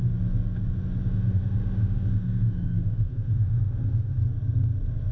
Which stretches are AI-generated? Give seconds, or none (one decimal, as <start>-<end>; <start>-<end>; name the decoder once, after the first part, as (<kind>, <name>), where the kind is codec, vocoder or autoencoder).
1.1-4.2 (autoencoder, DAC-VAE)